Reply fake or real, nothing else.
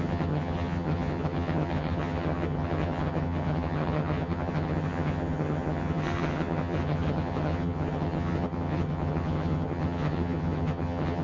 fake